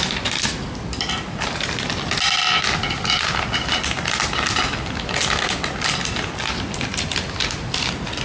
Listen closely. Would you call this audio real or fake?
real